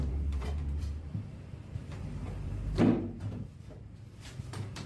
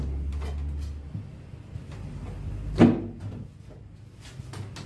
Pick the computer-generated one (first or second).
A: first